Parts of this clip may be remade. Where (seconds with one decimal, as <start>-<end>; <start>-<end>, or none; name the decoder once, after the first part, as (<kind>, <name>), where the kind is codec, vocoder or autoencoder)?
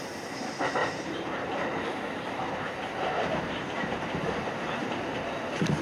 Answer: 0.8-4.3 (vocoder, BigVGAN v2); 4.8-5.8